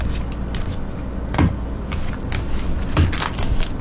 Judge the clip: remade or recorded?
recorded